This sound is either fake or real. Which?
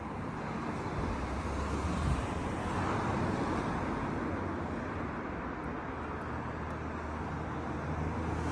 real